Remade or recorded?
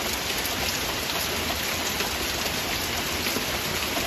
recorded